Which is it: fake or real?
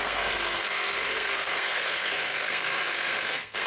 fake